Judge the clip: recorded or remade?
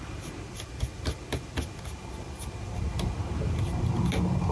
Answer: recorded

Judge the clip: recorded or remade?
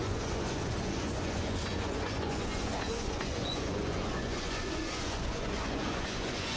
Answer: remade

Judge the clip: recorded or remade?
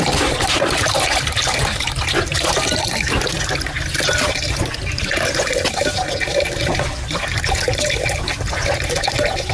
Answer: recorded